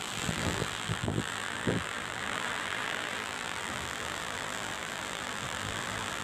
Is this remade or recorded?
remade